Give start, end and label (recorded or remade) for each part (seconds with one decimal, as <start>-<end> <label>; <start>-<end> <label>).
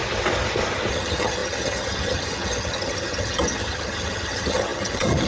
0.0-0.9 recorded; 0.9-5.3 remade